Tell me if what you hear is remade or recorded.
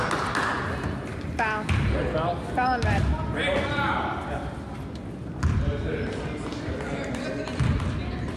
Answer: recorded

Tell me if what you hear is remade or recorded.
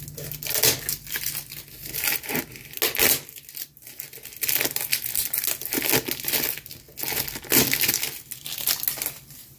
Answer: recorded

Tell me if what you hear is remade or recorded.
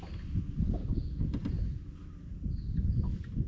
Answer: recorded